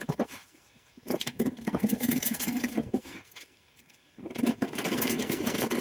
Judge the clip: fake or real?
fake